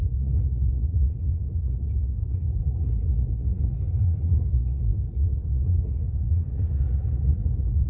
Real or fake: fake